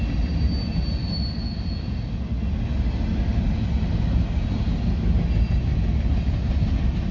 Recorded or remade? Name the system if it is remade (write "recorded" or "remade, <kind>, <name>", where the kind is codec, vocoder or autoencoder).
recorded